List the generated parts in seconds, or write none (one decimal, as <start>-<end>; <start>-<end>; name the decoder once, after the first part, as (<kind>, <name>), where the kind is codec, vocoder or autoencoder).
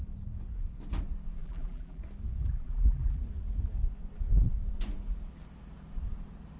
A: 1.4-2.0 (vocoder, BigVGAN v2); 2.4-3.2